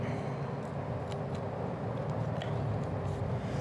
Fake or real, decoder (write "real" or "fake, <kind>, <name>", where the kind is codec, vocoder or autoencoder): real